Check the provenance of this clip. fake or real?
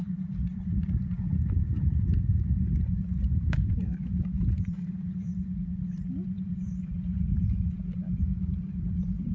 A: fake